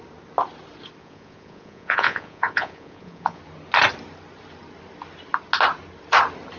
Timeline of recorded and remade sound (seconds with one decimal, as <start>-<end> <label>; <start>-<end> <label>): 0.0-1.0 recorded; 1.0-3.4 remade; 3.4-6.6 recorded